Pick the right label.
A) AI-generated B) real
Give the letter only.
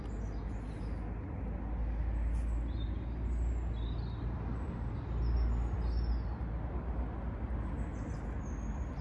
B